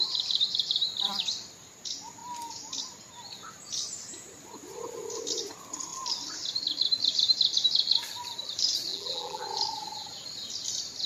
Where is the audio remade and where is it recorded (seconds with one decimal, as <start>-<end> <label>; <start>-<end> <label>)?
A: 0.0-8.9 recorded; 8.9-9.4 remade; 9.4-11.1 recorded